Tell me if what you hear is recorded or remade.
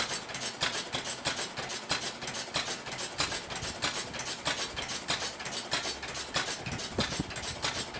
recorded